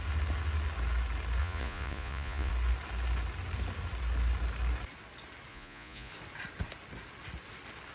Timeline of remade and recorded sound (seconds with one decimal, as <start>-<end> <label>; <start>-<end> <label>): 0.0-1.4 recorded; 1.4-2.5 remade; 2.5-5.5 recorded; 5.5-6.1 remade; 6.1-7.9 recorded